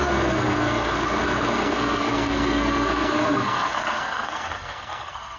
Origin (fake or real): fake